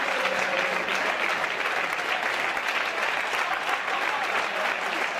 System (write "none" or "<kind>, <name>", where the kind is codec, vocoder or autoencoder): none